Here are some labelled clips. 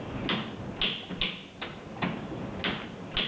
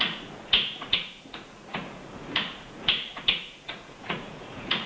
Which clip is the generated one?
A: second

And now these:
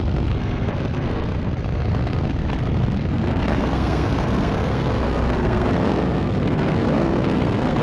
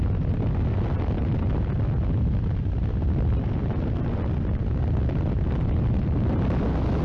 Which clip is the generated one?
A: first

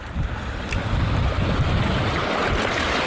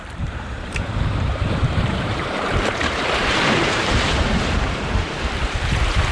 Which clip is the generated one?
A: second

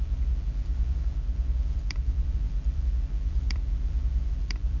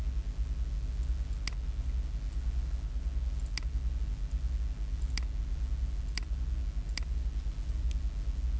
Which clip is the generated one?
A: first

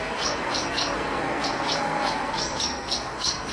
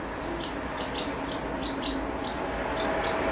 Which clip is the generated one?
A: first